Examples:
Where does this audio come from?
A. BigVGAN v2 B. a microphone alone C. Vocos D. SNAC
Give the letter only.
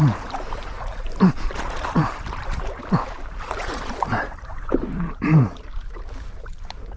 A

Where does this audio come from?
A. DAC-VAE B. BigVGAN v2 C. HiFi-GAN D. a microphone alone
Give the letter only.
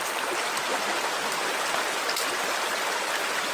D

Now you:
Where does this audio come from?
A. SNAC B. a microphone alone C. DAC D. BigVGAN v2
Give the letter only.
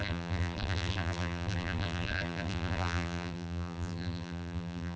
D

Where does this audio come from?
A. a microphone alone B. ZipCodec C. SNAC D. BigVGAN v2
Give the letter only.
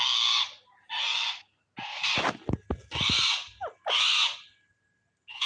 A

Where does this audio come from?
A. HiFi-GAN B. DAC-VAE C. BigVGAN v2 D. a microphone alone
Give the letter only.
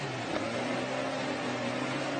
D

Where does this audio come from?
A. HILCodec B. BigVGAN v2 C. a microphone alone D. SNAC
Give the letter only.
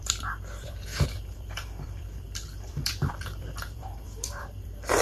B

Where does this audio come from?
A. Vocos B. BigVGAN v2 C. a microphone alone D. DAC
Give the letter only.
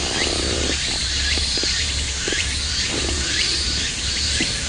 B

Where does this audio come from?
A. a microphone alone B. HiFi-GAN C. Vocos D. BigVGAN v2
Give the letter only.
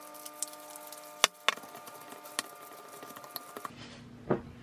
A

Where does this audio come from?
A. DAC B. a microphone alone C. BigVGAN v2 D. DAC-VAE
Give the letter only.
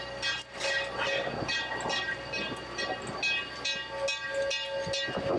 B